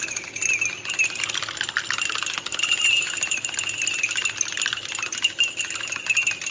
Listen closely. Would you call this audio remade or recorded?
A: recorded